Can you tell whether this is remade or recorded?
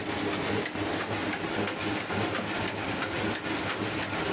recorded